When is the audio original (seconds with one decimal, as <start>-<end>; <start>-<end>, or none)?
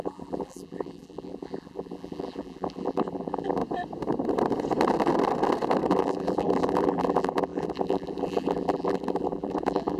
3.6-5.9